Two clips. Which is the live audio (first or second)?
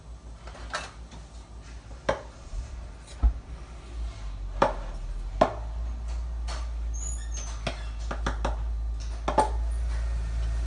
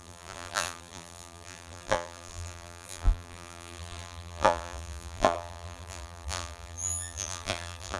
first